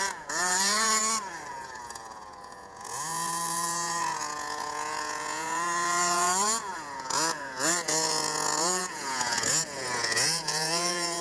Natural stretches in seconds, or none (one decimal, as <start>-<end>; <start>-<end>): 1.0-1.5